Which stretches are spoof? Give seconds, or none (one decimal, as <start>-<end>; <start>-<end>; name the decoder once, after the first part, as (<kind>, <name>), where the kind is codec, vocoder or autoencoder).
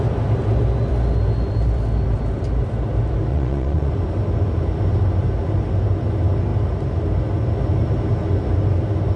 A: 3.3-3.9 (vocoder, Vocos)